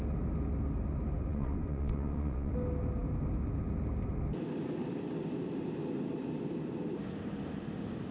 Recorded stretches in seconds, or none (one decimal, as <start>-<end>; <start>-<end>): 0.0-1.3; 2.5-8.1